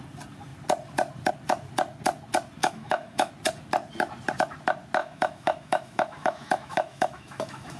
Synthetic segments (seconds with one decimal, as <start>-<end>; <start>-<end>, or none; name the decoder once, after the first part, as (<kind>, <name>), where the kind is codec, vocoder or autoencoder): 2.6-3.3 (autoencoder, DAC-VAE); 5.0-7.8